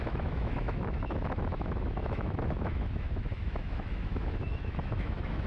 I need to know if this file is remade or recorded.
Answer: remade